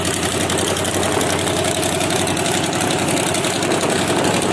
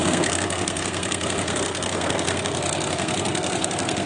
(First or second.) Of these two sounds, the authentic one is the first